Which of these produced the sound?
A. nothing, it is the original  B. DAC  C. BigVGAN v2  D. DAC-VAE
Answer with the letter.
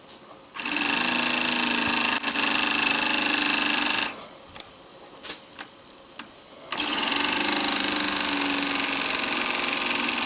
A